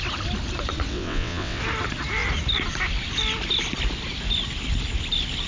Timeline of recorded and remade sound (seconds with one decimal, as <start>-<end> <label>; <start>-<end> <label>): 0.0-0.9 recorded; 0.9-1.6 remade; 1.6-5.5 recorded

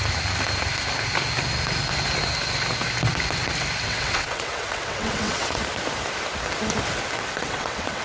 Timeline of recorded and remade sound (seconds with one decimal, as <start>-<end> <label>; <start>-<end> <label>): 0.0-3.8 recorded; 3.8-5.6 remade; 5.6-7.4 recorded; 7.4-8.0 remade

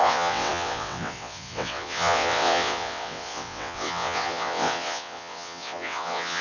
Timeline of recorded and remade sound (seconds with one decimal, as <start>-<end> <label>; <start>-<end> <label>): 0.0-6.4 remade

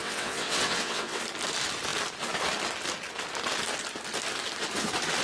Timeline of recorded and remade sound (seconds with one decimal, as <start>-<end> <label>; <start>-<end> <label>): 0.0-1.2 remade; 1.2-5.2 recorded

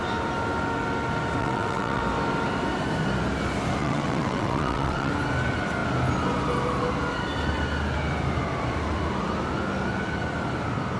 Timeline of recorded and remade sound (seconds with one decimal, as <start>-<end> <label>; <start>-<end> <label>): 0.0-1.4 recorded; 1.4-2.0 remade; 2.0-3.8 recorded; 3.8-5.1 remade; 5.1-11.0 recorded

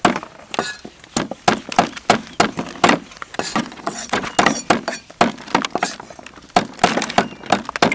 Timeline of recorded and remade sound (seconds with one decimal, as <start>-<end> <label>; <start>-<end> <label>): 0.0-3.5 recorded; 3.5-4.3 remade; 4.3-7.9 recorded

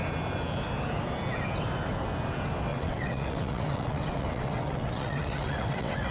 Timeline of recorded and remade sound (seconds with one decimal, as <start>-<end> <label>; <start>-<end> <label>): 0.0-2.7 recorded; 2.7-6.1 remade